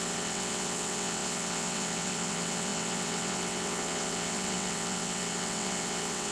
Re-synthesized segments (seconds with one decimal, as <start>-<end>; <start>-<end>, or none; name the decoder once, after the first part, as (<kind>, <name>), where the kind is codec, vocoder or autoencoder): 0.0-6.3 (vocoder, WaveNeXt)